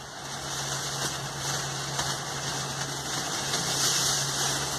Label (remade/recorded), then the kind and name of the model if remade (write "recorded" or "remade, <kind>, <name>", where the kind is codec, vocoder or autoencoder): recorded